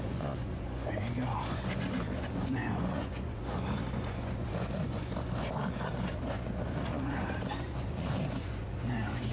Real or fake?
fake